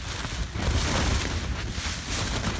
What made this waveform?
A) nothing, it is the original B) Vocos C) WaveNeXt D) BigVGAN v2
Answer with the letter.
A